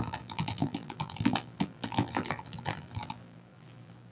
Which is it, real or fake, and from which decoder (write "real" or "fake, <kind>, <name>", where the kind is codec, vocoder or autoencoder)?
fake, vocoder, BigVGAN v2